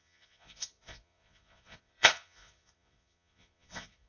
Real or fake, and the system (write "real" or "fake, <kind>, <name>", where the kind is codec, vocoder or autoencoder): fake, vocoder, Vocos